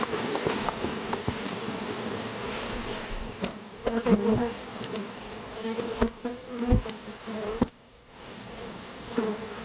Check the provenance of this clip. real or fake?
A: fake